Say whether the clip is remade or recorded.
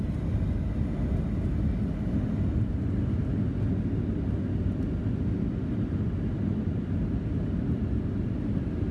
recorded